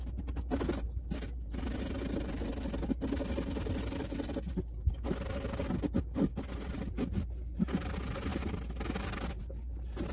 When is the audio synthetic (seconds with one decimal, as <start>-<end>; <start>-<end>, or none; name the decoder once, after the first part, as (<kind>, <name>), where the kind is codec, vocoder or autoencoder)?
none